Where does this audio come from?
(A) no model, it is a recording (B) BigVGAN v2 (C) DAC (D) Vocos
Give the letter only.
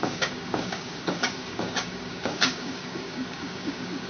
C